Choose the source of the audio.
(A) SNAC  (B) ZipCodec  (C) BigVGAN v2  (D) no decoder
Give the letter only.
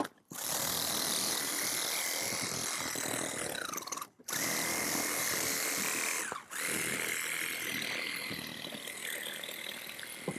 C